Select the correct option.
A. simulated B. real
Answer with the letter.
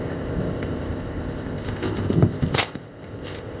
A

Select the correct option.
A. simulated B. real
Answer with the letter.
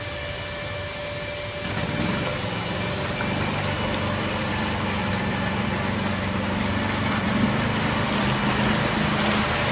B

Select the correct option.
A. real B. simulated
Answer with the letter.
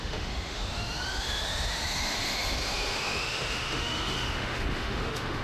B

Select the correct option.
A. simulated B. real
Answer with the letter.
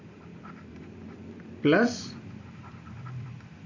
A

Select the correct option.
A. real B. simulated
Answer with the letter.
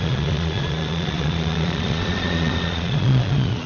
B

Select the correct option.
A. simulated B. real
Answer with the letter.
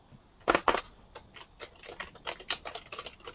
B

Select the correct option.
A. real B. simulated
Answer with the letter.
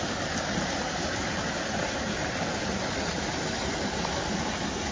A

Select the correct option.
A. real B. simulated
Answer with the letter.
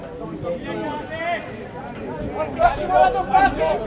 A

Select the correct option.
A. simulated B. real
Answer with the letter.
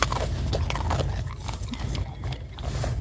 B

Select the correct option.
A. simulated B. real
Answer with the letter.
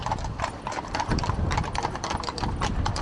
B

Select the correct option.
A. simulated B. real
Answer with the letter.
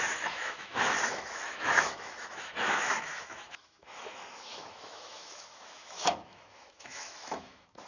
A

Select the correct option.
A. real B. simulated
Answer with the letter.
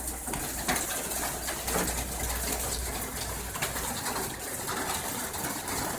A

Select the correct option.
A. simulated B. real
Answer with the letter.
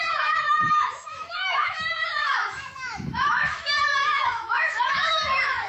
A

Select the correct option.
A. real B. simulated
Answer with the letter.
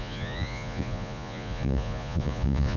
B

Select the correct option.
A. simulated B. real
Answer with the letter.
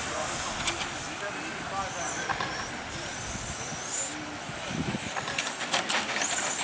B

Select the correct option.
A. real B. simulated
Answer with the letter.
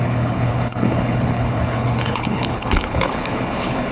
B